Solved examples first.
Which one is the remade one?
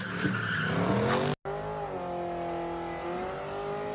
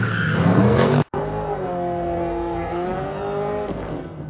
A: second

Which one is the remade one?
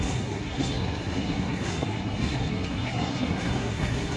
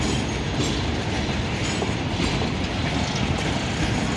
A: first